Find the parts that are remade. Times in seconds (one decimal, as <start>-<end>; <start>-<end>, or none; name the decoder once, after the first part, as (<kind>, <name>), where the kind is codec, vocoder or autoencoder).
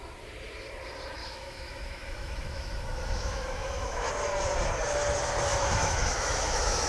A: 1.2-4.1 (autoencoder, DAC-VAE); 5.5-6.9